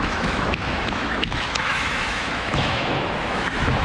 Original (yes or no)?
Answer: no